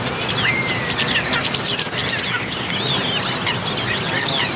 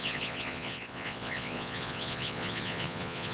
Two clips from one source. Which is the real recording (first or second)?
first